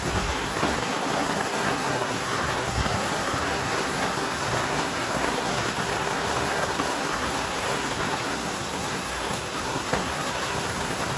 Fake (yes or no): yes